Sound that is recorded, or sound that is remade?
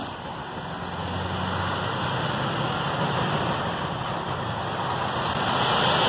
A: recorded